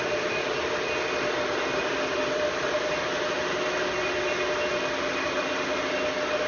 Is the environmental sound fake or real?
real